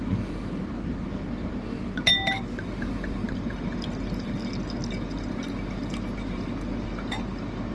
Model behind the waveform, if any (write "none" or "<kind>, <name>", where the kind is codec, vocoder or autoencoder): none